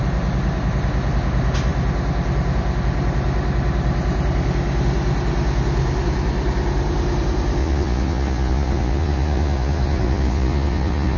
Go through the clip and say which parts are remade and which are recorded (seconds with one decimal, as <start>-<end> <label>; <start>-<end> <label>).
0.0-7.6 recorded; 7.6-11.2 remade